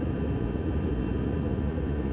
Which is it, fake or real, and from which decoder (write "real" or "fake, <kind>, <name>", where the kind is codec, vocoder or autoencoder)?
fake, vocoder, Vocos